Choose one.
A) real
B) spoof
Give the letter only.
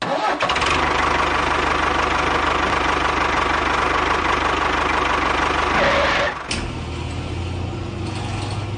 A